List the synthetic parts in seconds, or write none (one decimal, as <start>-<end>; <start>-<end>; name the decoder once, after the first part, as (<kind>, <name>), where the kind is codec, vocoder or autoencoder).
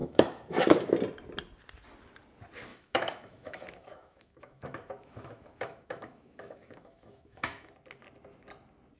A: 0.0-0.9 (autoencoder, DAC-VAE); 2.7-7.7